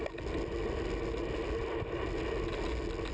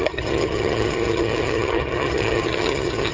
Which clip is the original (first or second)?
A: first